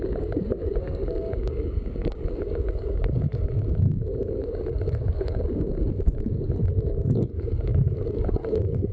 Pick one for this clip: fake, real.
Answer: fake